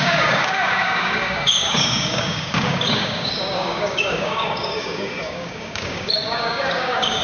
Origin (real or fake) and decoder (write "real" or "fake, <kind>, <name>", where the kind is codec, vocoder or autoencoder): fake, codec, DAC